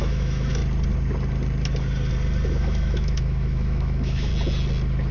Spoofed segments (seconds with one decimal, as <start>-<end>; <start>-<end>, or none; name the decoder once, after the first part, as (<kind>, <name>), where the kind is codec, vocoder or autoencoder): 0.0-0.6 (autoencoder, DAC-VAE); 2.6-4.3